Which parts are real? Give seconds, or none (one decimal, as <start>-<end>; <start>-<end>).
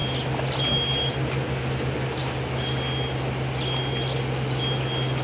0.0-5.2